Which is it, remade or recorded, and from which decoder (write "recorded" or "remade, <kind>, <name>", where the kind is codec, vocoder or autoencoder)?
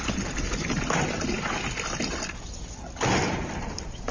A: recorded